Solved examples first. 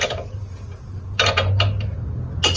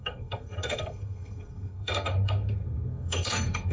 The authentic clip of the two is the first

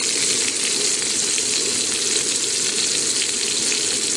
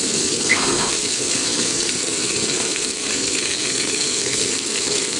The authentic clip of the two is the first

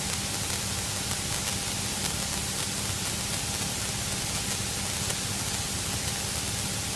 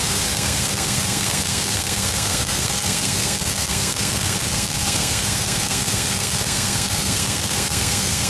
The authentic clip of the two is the first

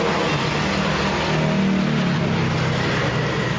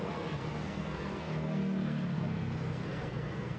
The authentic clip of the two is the first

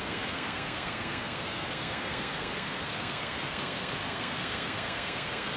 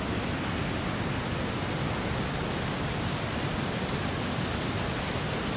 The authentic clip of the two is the second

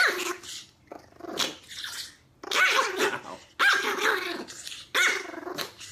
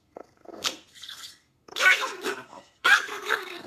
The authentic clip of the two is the first